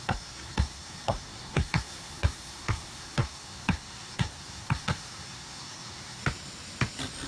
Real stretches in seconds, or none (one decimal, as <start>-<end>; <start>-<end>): 6.2-7.3